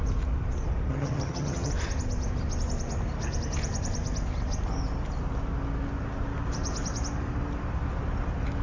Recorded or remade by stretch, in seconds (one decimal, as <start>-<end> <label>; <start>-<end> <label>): 0.0-0.9 recorded; 0.9-1.7 remade; 1.7-8.6 recorded